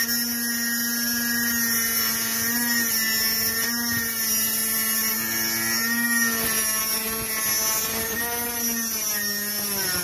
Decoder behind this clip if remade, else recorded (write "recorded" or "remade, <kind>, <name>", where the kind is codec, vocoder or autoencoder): recorded